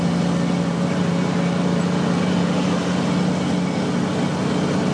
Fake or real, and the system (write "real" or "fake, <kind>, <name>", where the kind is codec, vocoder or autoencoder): real